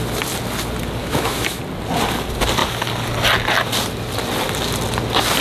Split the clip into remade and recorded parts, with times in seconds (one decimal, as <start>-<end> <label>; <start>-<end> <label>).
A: 0.0-1.0 recorded; 1.0-1.6 remade; 1.6-5.4 recorded